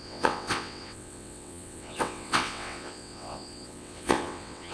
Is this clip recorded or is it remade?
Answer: remade